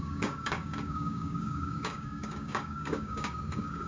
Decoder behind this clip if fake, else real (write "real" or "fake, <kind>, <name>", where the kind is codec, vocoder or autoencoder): fake, codec, DAC